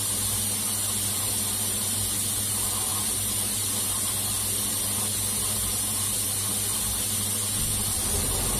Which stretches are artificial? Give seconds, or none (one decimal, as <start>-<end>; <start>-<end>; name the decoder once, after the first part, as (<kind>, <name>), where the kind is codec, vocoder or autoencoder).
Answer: none